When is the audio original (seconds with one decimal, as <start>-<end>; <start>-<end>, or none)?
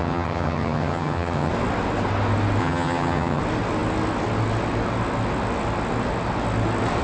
1.5-2.6; 3.4-7.0